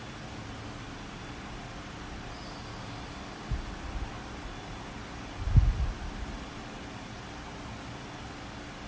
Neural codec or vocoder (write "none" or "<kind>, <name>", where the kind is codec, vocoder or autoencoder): none